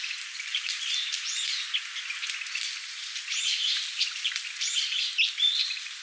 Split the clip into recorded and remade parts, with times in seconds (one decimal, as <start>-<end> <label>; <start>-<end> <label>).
0.0-1.4 remade; 1.4-3.3 recorded; 3.3-6.0 remade